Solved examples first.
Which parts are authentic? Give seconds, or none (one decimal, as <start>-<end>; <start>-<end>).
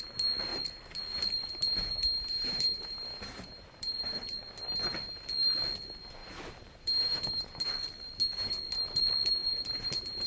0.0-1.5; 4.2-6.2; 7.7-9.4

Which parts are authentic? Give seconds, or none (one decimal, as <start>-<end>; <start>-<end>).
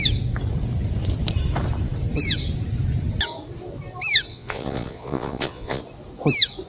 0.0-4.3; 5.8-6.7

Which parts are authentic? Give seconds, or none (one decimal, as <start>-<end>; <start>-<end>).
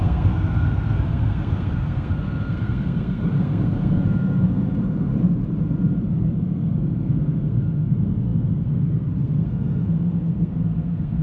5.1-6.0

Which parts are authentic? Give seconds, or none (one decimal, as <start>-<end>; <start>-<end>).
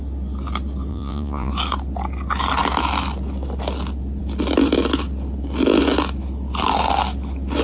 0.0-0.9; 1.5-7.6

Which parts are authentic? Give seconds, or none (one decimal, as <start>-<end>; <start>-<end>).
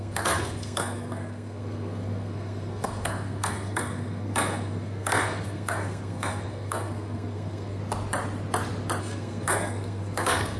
7.8-9.0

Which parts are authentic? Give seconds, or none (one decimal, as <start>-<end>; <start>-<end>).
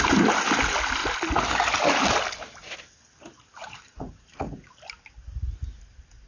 0.0-3.6; 4.7-6.3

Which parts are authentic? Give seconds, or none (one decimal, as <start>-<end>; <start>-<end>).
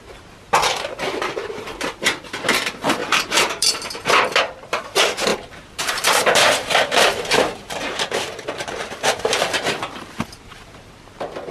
0.0-3.0; 3.9-5.3; 10.1-11.5